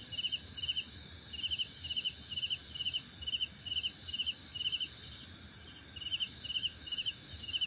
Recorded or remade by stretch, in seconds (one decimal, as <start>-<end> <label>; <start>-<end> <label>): 0.0-6.6 recorded; 6.6-7.7 remade